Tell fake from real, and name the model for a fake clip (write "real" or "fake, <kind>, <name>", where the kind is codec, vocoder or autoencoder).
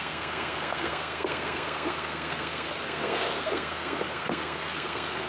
fake, codec, SNAC